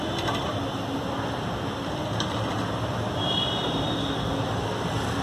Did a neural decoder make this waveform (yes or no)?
no